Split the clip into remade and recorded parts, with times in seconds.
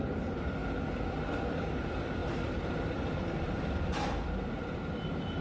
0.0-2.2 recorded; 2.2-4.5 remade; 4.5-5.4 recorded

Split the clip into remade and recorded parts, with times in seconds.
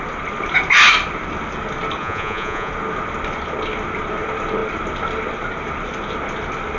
0.0-2.0 recorded; 2.0-2.7 remade; 2.7-6.8 recorded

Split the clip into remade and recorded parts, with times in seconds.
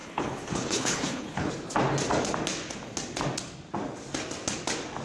0.0-1.5 remade; 1.5-5.0 recorded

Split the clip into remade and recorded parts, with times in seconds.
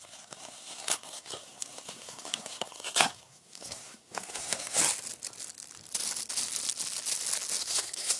0.0-4.8 remade; 4.8-7.6 recorded; 7.6-8.2 remade